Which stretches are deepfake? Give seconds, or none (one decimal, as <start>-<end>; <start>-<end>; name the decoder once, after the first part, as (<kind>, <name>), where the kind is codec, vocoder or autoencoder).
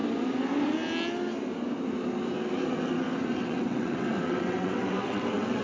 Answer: 3.4-5.6 (vocoder, WaveNeXt)